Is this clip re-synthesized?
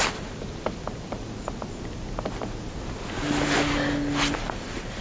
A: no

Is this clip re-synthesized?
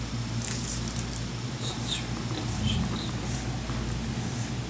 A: no